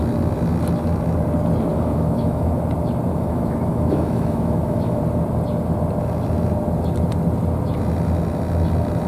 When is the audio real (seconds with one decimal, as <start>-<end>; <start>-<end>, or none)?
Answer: 0.0-1.7; 2.6-3.1; 5.0-9.1